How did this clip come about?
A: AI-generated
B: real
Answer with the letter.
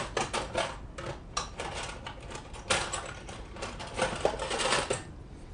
B